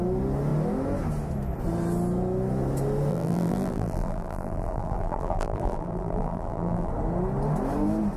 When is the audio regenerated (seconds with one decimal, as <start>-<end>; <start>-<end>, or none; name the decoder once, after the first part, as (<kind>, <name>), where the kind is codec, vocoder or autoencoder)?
3.1-6.9 (vocoder, BigVGAN v2)